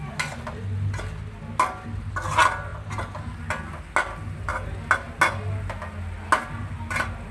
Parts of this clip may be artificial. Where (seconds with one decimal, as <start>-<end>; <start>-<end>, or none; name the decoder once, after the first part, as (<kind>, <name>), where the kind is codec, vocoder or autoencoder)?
none